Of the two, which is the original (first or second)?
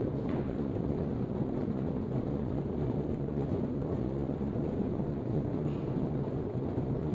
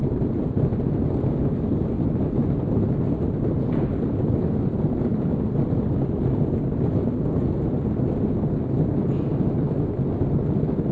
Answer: second